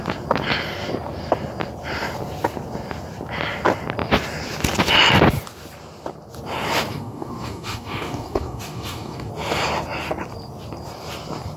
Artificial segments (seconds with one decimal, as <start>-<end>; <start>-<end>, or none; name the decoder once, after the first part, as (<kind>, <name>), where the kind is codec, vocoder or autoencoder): 6.9-9.3 (codec, DAC)